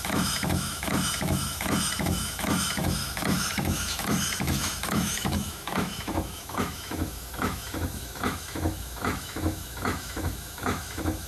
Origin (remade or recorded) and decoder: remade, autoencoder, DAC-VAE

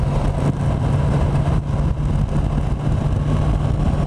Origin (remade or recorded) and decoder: recorded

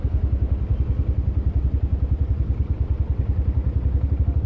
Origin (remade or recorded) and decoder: recorded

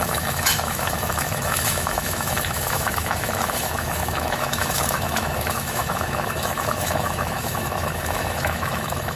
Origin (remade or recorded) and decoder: remade, autoencoder, DAC-VAE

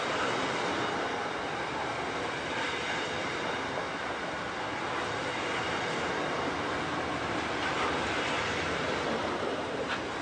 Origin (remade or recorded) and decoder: recorded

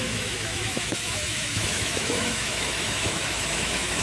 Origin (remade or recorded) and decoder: remade, autoencoder, DAC-VAE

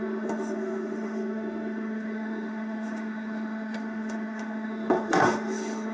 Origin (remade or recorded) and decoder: remade, autoencoder, DAC-VAE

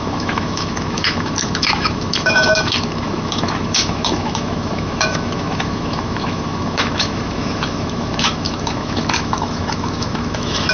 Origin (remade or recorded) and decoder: remade, autoencoder, DAC-VAE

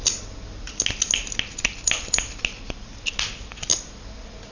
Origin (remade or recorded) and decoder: recorded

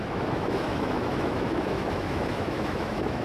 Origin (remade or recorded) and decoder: remade, autoencoder, DAC-VAE